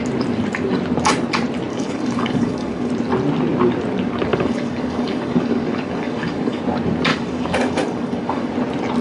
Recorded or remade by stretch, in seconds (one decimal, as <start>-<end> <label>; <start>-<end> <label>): 0.0-1.7 recorded; 1.7-2.9 remade; 2.9-4.3 recorded; 4.3-6.6 remade; 6.6-7.1 recorded; 7.1-8.5 remade; 8.5-9.0 recorded